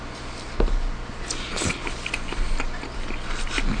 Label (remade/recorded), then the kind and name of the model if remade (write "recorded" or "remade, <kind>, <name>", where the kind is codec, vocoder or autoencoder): recorded